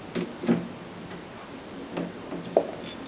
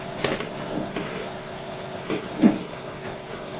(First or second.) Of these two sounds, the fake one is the second